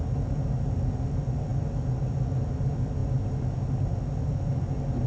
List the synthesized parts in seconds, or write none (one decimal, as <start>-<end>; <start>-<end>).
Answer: none